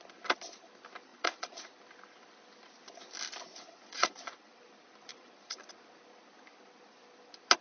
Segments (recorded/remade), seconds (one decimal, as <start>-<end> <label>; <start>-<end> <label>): 0.0-1.1 recorded; 1.1-1.8 remade; 1.8-3.5 recorded; 3.5-4.6 remade; 4.6-5.1 recorded; 5.1-5.7 remade; 5.7-7.6 recorded